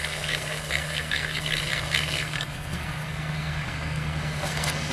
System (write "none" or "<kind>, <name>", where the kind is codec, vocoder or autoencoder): codec, SNAC